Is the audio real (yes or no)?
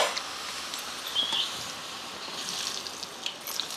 yes